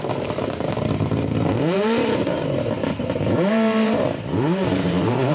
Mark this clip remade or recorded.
remade